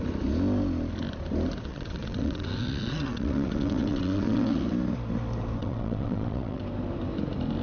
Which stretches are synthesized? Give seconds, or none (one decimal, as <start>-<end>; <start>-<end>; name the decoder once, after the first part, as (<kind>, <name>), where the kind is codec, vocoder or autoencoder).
1.7-4.6 (vocoder, WaveNeXt); 5.6-6.6